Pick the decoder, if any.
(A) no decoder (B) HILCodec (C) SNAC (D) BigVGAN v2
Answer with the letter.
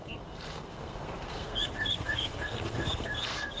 C